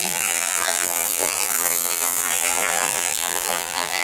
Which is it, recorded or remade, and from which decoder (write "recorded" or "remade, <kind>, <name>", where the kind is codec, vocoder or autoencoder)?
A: remade, vocoder, BigVGAN v2